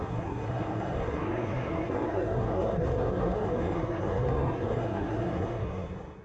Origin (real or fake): fake